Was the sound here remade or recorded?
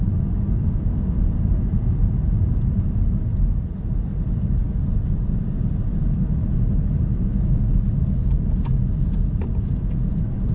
recorded